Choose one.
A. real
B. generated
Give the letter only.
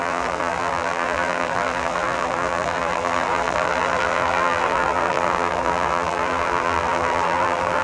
B